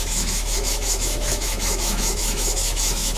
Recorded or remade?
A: remade